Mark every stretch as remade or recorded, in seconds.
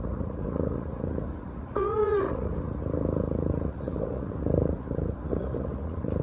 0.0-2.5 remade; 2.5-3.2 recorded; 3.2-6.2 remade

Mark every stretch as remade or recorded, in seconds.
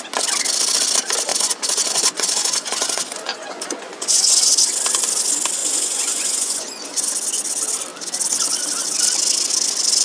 0.0-1.3 recorded; 1.3-4.6 remade; 4.6-5.6 recorded; 5.6-7.1 remade; 7.1-10.0 recorded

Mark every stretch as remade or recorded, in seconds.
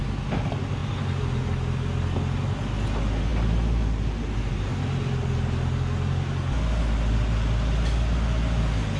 0.0-9.0 recorded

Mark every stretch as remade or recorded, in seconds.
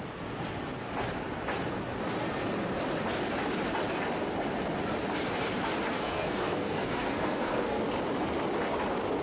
0.0-5.9 recorded; 5.9-7.8 remade; 7.8-9.2 recorded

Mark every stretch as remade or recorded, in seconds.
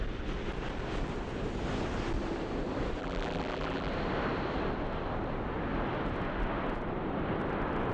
0.0-3.0 recorded; 3.0-3.9 remade; 3.9-7.9 recorded